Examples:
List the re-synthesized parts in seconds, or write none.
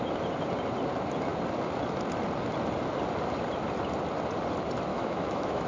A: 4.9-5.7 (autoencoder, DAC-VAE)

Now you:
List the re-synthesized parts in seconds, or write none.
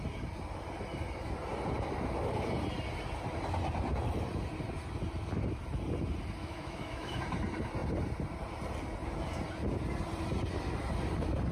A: 6.4-7.2 (autoencoder, DAC-VAE)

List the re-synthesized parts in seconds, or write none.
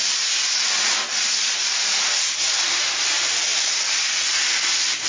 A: none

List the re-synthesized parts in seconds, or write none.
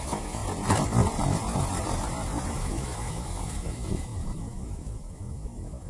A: 0.0-0.4 (autoencoder, DAC-VAE); 2.5-5.9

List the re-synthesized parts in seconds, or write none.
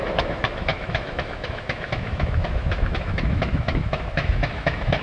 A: 0.0-5.0 (autoencoder, DAC-VAE)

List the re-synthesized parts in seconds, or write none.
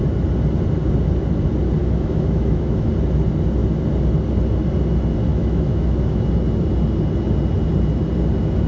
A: 1.8-2.9 (autoencoder, DAC-VAE); 5.3-6.3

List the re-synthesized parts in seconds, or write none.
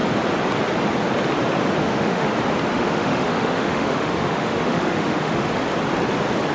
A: 1.8-2.3 (autoencoder, DAC-VAE); 2.7-5.5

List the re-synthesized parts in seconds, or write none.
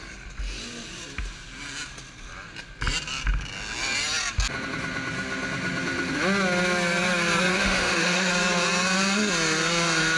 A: 7.5-8.3 (autoencoder, DAC-VAE)